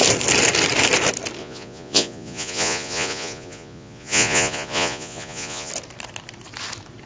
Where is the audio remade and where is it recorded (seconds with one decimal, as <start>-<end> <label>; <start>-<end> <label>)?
0.0-1.4 recorded; 1.4-5.7 remade; 5.7-7.1 recorded